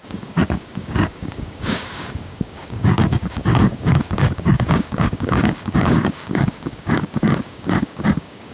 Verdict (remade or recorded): remade